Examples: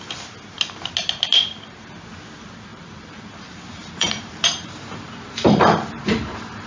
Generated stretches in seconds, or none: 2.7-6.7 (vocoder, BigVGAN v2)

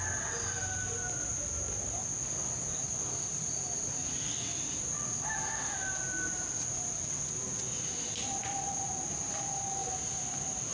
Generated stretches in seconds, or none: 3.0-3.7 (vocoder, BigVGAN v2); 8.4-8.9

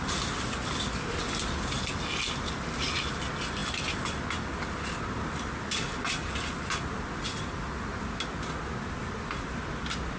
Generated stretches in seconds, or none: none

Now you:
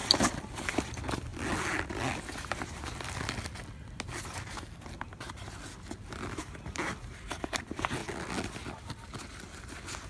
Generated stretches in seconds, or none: 0.0-1.3 (vocoder, BigVGAN v2); 6.4-8.0; 8.7-10.1

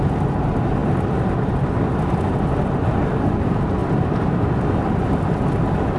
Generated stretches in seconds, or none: none